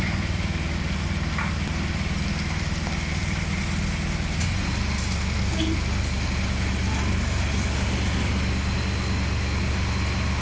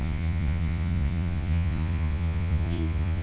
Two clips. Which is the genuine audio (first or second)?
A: first